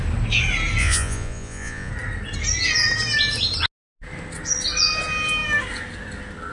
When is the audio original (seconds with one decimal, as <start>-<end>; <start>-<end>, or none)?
0.0-0.8; 1.9-6.5